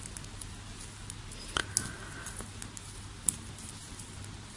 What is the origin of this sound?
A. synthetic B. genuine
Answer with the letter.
B